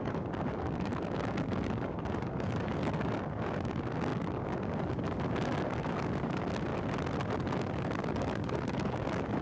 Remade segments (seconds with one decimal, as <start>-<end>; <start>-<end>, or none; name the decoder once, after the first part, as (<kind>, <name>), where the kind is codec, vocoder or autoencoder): 0.0-6.7 (codec, DAC); 7.4-9.4